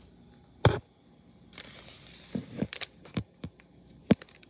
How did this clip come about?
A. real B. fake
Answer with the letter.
A